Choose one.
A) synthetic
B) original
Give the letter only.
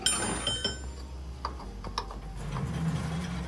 B